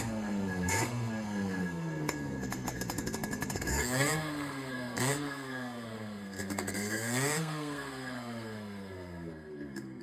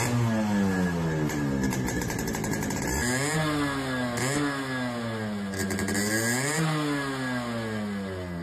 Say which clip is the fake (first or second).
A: first